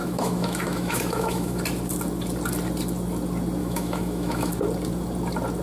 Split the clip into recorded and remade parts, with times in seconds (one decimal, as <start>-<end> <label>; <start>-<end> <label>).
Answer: 0.0-1.6 remade; 1.6-3.6 recorded; 3.6-4.5 remade; 4.5-5.6 recorded